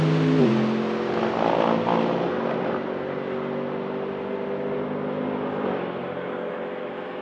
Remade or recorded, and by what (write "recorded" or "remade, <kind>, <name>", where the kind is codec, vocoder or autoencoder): recorded